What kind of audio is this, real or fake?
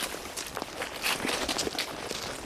real